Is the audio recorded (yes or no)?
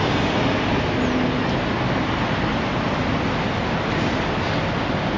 yes